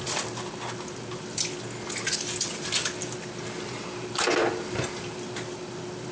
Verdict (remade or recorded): recorded